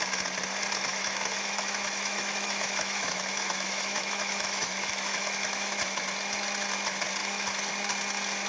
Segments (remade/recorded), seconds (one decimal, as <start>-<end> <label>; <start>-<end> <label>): 0.0-0.9 recorded; 0.9-5.8 remade; 5.8-7.2 recorded; 7.2-7.7 remade; 7.7-8.5 recorded